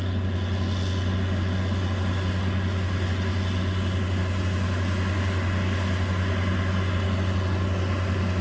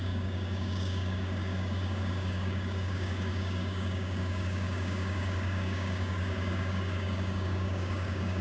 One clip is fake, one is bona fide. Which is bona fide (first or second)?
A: first